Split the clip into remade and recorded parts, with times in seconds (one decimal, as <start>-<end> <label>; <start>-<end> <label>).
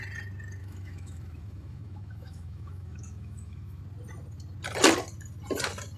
0.0-0.6 recorded; 0.6-3.8 remade; 3.8-6.0 recorded